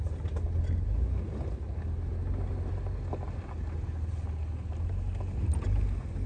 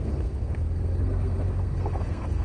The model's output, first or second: second